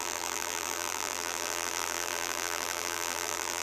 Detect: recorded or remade remade